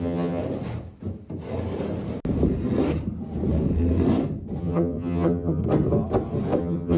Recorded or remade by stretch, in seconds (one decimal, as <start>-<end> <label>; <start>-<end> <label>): 0.0-0.4 remade; 0.4-4.6 recorded; 4.6-5.6 remade; 5.6-6.6 recorded; 6.6-7.0 remade